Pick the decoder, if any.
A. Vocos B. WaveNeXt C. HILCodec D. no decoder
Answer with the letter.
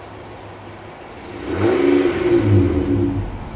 D